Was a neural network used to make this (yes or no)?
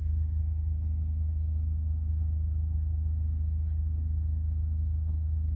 yes